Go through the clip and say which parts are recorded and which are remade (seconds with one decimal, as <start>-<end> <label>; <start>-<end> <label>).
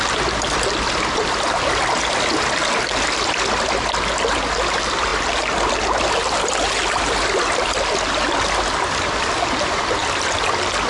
0.0-10.9 recorded